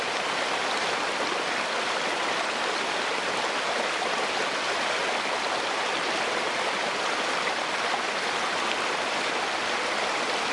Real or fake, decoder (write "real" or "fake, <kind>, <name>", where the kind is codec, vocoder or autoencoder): real